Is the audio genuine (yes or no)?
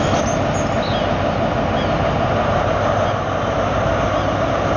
yes